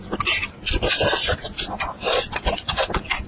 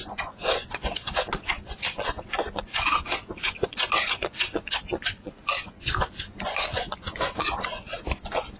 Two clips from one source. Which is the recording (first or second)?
first